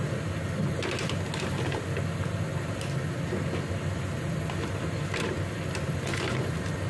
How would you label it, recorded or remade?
recorded